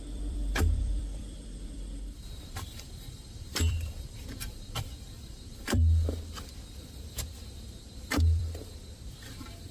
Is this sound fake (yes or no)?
yes